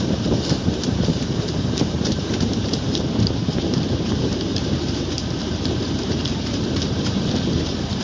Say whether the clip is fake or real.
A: fake